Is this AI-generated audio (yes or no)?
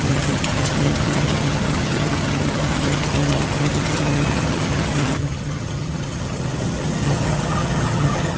yes